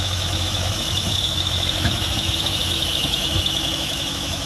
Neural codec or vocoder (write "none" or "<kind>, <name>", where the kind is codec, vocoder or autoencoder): autoencoder, DAC-VAE